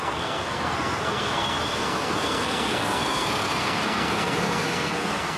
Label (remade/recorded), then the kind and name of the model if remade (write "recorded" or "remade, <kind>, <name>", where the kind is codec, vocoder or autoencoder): remade, codec, SNAC